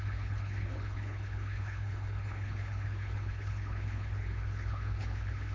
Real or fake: fake